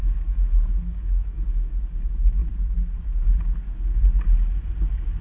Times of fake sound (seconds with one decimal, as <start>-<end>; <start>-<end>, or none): 0.0-1.7